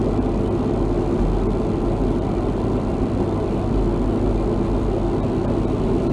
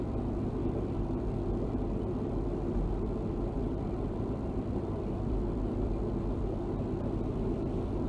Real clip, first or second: first